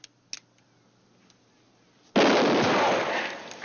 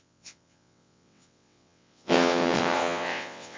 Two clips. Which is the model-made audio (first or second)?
second